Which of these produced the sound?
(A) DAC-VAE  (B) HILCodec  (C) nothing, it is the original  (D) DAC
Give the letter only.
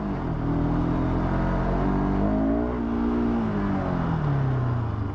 C